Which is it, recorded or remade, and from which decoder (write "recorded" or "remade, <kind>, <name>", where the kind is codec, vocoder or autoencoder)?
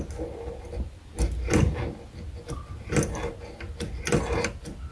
recorded